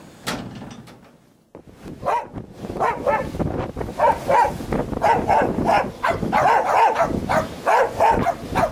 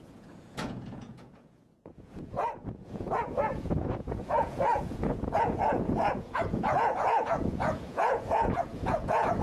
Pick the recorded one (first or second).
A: first